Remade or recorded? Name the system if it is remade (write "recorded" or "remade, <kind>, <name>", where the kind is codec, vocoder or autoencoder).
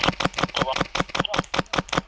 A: recorded